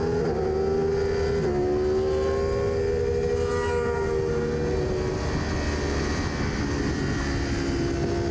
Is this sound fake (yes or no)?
no